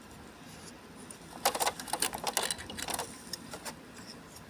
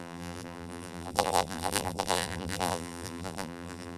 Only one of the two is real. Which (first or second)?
first